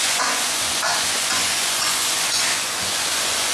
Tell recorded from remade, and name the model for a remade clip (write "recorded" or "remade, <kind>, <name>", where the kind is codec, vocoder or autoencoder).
remade, vocoder, Vocos